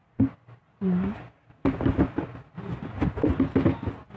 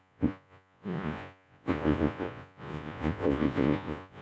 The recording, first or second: first